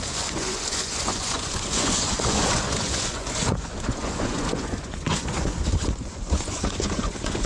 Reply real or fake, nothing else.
fake